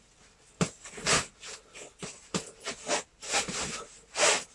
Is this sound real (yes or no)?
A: yes